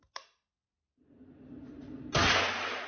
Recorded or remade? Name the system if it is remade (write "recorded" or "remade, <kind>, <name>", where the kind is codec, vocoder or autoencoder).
recorded